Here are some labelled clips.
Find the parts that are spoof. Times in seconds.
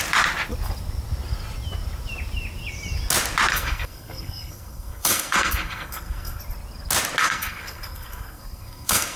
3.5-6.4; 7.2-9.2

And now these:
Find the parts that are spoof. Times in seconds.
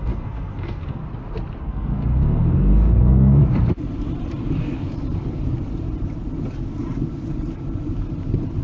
0.0-1.0; 1.6-3.4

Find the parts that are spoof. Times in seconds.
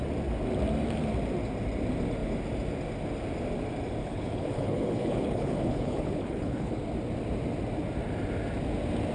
4.0-6.7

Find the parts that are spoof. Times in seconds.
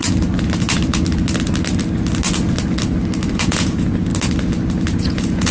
3.3-4.1; 5.0-5.5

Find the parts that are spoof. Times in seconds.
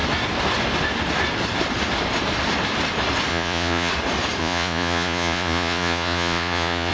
3.3-3.9; 4.4-6.9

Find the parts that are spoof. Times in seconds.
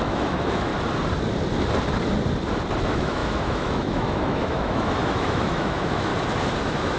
0.0-0.7; 2.8-6.1; 6.6-7.0